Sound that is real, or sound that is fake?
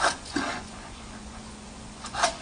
fake